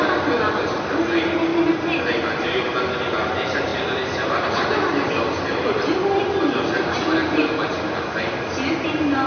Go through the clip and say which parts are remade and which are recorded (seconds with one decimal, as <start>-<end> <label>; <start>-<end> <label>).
0.0-9.3 recorded